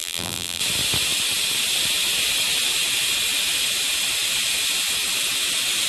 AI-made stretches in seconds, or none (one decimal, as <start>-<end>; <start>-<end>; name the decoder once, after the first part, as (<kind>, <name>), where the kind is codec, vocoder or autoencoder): 0.0-0.6 (vocoder, BigVGAN v2)